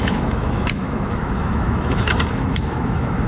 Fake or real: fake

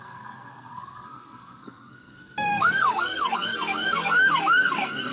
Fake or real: fake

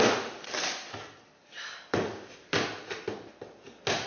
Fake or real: real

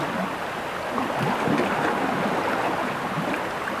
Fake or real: real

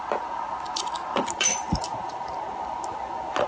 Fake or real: real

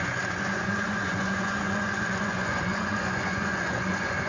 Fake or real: fake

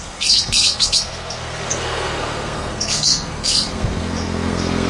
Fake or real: fake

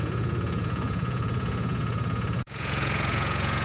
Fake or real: fake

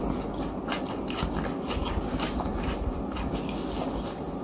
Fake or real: real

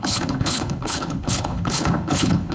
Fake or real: fake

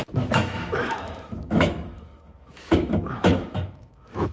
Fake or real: fake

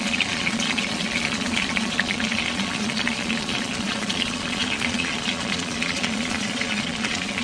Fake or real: fake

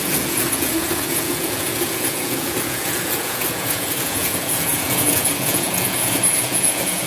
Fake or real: fake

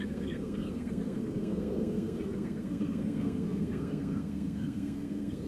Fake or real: fake